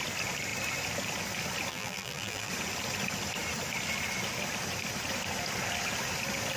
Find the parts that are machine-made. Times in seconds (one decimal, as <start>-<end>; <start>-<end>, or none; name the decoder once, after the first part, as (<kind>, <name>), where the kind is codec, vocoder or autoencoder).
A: 1.7-2.5 (vocoder, BigVGAN v2)